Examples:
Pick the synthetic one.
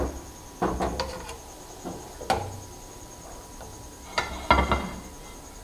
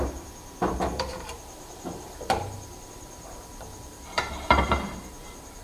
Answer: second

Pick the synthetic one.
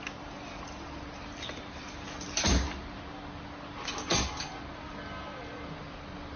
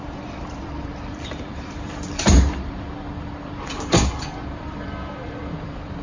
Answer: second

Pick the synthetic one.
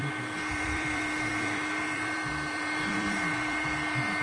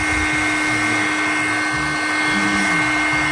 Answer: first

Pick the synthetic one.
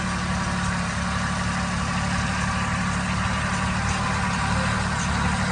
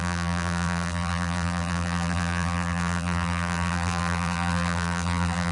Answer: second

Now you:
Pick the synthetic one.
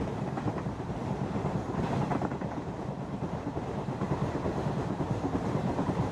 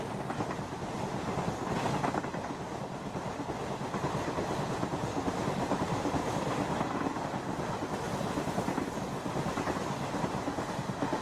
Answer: first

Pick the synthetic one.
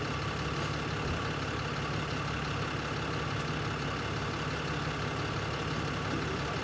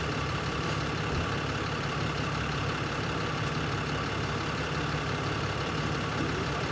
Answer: second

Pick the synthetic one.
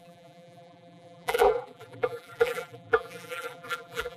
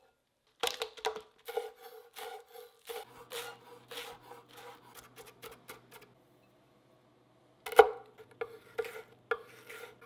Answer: first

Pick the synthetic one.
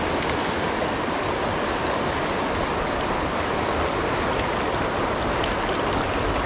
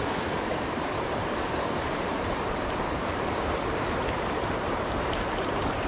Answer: second